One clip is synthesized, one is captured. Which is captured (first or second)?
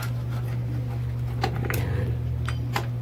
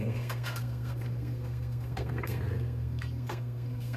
first